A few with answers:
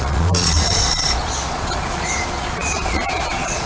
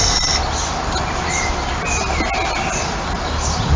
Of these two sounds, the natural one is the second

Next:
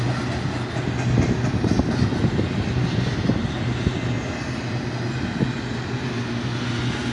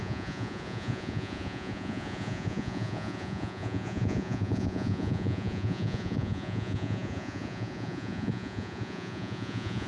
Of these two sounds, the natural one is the first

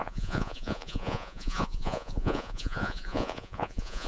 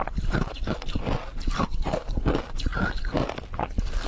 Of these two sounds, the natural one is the second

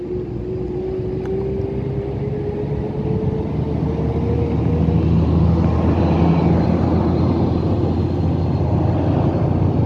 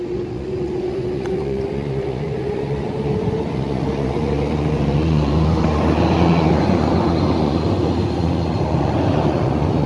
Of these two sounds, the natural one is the first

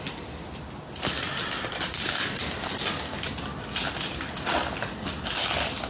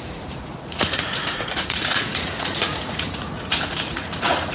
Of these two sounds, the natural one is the first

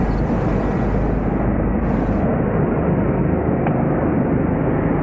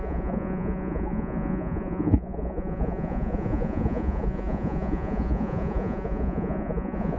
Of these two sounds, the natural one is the first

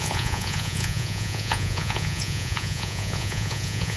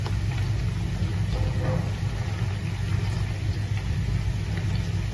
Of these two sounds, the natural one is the second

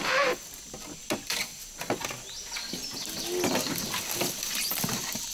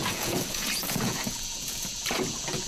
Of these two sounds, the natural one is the first